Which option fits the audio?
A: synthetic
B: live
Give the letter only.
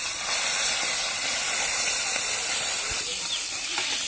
A